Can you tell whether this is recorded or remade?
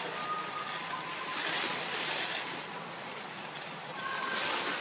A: recorded